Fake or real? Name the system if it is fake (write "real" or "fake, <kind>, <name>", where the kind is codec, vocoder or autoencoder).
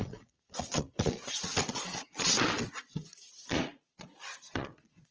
fake, vocoder, Vocos